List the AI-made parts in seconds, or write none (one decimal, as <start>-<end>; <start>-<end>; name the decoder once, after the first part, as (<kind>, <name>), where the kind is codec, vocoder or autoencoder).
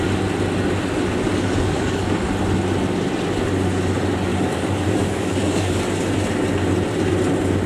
1.3-2.3 (codec, DAC); 4.3-5.8